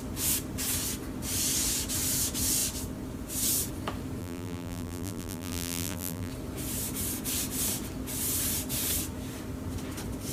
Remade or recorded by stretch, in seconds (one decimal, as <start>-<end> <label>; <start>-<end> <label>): 0.0-4.2 recorded; 4.2-6.3 remade; 6.3-10.3 recorded